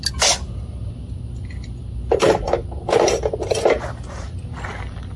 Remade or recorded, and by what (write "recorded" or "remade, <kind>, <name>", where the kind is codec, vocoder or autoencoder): recorded